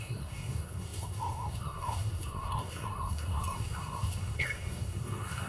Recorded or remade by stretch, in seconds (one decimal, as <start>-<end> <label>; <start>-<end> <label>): 0.0-5.5 remade